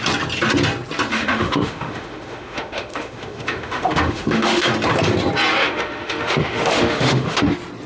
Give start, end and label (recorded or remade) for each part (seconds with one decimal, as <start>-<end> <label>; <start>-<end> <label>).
0.0-1.1 recorded; 1.1-4.7 remade; 4.7-5.6 recorded; 5.6-7.4 remade; 7.4-7.9 recorded